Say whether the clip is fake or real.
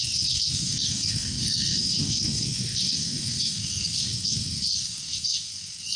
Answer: fake